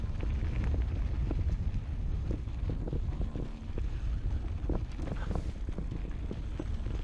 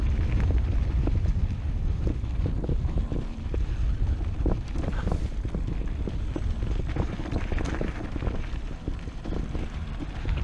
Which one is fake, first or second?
second